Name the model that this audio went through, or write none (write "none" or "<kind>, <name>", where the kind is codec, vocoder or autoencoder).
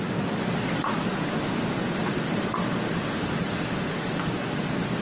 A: none